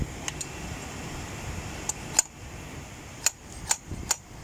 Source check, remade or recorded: recorded